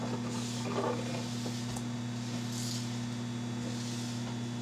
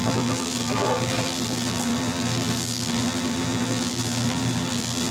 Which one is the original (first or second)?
first